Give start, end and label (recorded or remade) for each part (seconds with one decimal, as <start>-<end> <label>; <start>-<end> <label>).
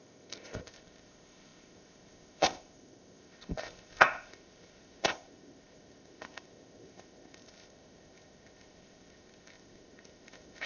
0.0-10.7 remade